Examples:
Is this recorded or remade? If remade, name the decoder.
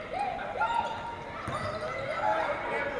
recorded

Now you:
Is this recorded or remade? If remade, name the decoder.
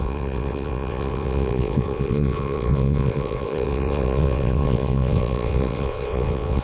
remade, vocoder, WaveNeXt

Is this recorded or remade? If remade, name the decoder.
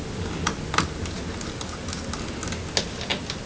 recorded